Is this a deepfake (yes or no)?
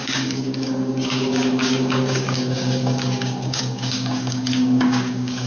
yes